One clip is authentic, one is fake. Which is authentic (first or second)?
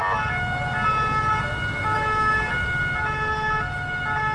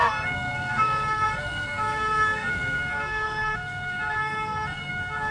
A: first